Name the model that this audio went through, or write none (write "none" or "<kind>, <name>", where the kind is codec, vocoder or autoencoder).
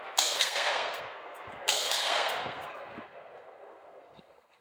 codec, SNAC